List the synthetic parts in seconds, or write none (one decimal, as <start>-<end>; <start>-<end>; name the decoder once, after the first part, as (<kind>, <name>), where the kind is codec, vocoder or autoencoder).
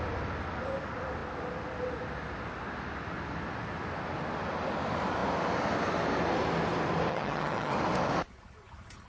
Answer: 7.1-7.7 (vocoder, HiFi-GAN)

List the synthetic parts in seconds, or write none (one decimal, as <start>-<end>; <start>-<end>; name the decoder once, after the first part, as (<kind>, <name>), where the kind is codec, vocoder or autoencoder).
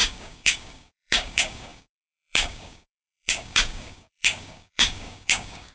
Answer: 0.0-5.7 (codec, DAC)